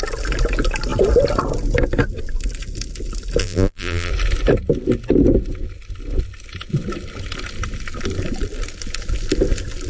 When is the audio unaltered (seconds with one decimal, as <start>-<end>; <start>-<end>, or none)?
0.0-3.4; 4.1-9.9

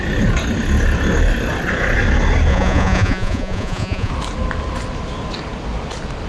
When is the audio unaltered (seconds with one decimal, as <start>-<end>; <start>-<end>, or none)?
0.0-2.5; 4.1-6.3